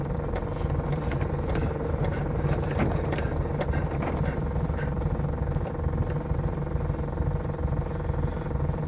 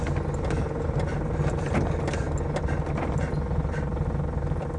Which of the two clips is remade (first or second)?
first